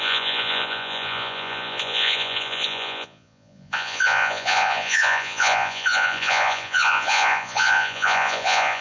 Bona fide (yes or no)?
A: no